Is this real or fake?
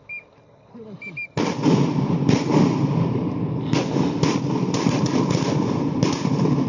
real